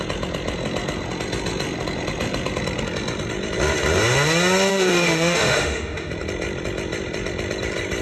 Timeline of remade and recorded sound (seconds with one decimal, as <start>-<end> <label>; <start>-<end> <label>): 0.0-4.7 recorded; 4.7-6.1 remade; 6.1-8.0 recorded